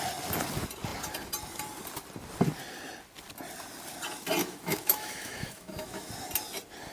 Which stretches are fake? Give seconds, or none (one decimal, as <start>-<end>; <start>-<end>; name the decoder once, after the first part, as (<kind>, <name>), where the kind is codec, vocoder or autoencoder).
4.4-6.1 (autoencoder, DAC-VAE)